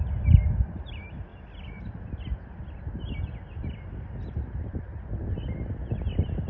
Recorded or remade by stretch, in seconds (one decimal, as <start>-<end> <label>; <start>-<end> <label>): 0.0-6.5 recorded